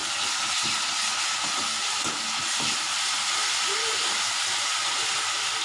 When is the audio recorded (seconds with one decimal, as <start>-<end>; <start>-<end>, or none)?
0.0-5.6